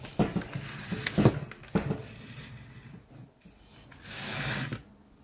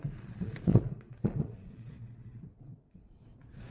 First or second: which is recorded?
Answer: first